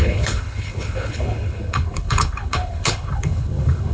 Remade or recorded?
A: remade